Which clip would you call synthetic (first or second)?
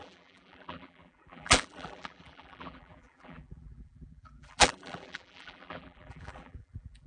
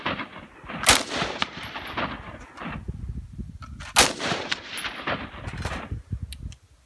first